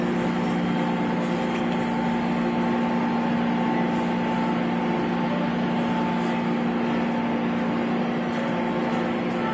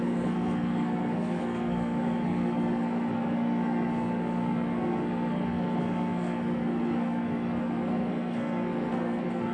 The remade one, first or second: second